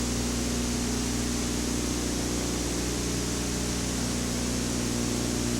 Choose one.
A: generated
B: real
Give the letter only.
B